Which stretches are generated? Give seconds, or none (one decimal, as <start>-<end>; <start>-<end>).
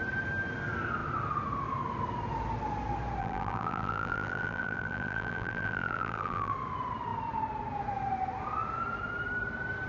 3.2-6.5